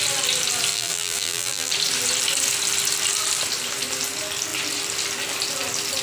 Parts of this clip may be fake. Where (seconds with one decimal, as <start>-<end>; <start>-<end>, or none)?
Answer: 0.7-1.7